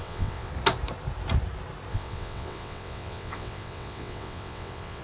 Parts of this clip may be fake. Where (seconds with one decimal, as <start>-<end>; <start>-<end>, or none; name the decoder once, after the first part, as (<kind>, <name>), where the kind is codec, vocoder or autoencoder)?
0.0-0.5 (vocoder, WaveNeXt); 1.9-5.0